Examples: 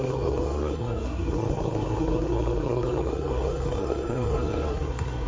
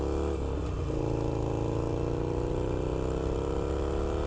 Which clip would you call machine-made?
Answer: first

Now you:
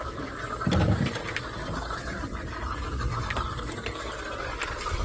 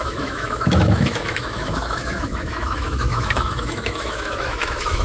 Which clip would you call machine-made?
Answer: second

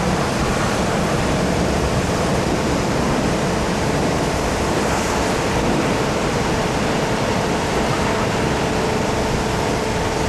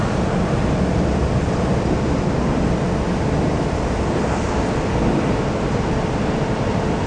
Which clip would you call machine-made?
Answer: first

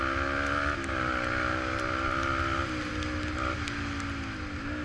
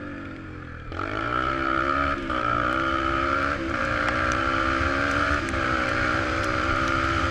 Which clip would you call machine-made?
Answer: second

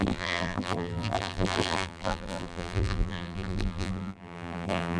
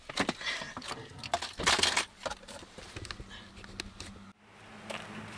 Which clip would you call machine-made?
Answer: first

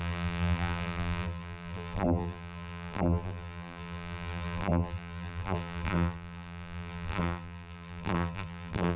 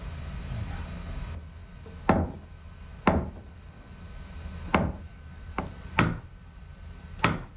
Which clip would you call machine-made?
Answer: first